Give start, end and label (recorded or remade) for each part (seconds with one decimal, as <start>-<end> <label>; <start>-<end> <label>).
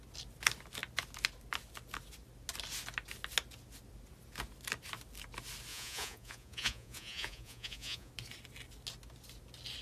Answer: 0.0-5.7 recorded; 5.7-8.1 remade; 8.1-9.8 recorded